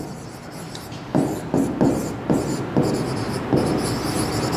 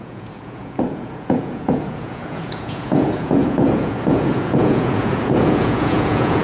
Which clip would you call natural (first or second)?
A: first